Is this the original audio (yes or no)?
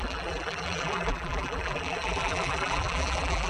no